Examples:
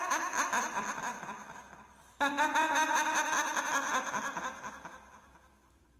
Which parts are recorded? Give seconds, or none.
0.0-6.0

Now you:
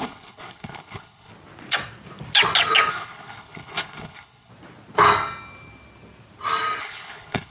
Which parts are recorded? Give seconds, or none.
1.3-2.9; 4.5-6.8